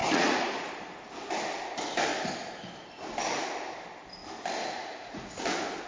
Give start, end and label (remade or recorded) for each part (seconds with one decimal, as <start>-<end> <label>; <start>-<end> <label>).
0.0-0.7 remade; 0.7-4.6 recorded; 4.6-5.4 remade; 5.4-5.9 recorded